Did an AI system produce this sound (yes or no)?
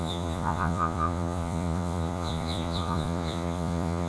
yes